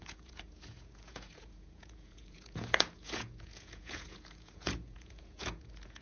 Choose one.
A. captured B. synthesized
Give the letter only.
B